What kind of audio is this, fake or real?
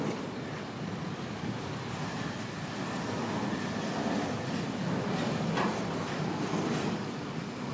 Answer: real